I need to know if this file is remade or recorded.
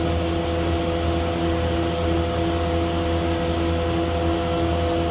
recorded